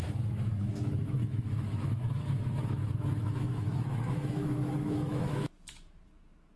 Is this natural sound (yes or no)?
no